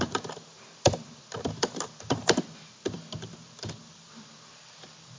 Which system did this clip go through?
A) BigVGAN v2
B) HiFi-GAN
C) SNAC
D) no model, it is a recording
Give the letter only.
A